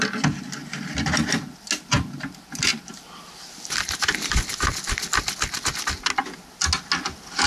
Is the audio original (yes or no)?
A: yes